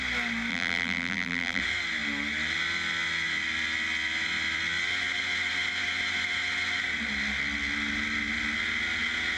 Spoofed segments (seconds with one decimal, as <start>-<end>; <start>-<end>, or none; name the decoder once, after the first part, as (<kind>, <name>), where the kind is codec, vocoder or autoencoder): 0.5-1.6 (vocoder, BigVGAN v2)